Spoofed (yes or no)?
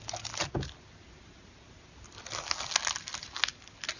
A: no